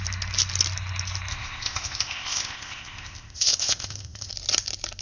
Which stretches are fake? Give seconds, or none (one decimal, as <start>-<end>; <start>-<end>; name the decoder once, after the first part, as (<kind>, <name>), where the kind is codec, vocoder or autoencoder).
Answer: 1.3-4.3 (codec, ZipCodec)